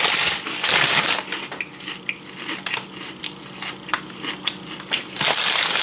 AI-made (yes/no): no